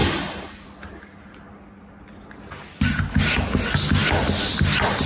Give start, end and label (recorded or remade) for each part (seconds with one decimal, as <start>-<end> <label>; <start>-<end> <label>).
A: 0.0-5.1 recorded